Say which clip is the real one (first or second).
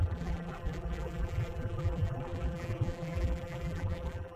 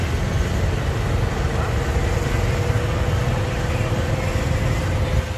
second